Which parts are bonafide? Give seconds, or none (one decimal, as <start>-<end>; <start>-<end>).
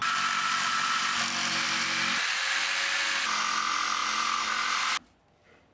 0.0-5.7